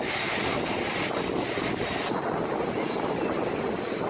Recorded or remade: recorded